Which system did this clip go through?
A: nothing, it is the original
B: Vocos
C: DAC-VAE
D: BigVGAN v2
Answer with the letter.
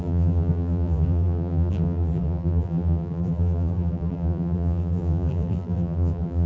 D